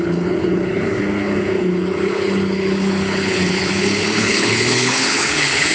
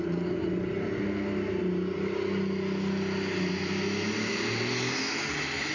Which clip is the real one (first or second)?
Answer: second